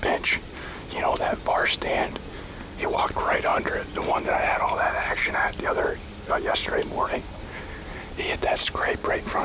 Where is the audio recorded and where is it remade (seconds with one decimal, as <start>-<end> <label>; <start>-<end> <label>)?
0.0-9.4 recorded